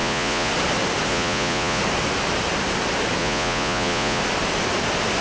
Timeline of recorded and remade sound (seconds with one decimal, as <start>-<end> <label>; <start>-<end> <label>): 0.0-0.5 remade; 0.5-1.1 recorded; 1.1-1.8 remade; 1.8-3.2 recorded; 3.2-4.2 remade; 4.2-5.2 recorded

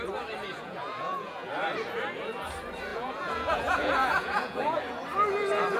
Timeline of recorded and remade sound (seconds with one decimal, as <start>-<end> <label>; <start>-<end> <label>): 0.0-0.5 recorded; 0.5-1.5 remade; 1.5-2.9 recorded; 2.9-4.8 remade; 4.8-5.8 recorded